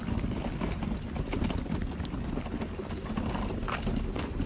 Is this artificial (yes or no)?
no